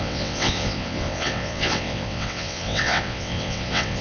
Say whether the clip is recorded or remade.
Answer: remade